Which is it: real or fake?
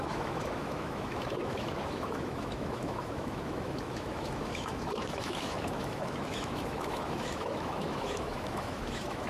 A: fake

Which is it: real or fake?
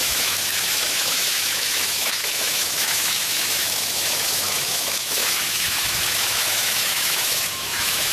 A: fake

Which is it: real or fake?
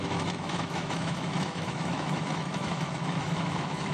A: fake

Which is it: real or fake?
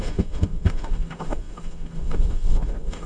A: fake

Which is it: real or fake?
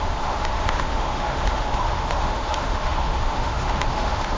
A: fake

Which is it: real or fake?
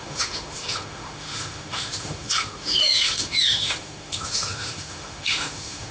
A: fake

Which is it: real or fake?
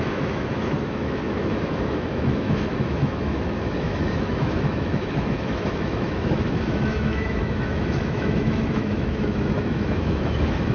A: fake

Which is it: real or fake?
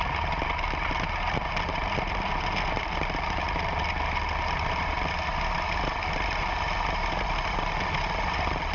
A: real